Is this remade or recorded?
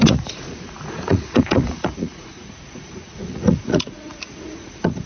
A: remade